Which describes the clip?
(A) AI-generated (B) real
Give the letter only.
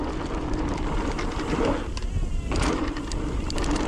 B